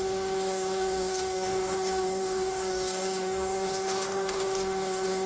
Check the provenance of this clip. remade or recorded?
remade